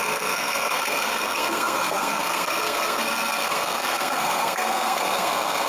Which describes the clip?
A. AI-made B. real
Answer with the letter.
A